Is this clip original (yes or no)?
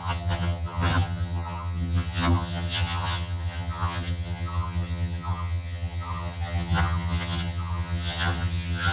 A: no